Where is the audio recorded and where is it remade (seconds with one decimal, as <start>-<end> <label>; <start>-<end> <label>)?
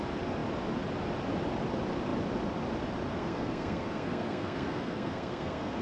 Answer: 0.0-3.1 recorded; 3.1-5.8 remade